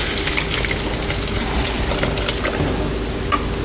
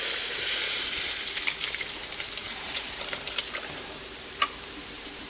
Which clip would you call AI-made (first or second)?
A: second